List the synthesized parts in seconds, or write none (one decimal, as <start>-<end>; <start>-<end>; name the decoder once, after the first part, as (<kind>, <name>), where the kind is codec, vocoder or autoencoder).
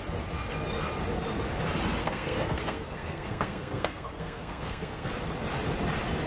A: 2.0-5.1 (codec, SNAC)